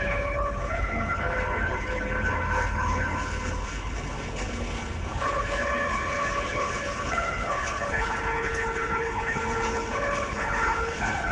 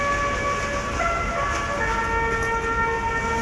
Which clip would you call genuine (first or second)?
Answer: second